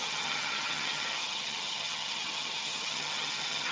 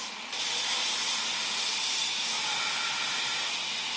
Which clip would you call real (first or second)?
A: second